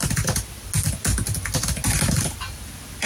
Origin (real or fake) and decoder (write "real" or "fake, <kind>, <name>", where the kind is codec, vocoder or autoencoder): real